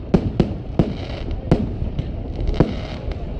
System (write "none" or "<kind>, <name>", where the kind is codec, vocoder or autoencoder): none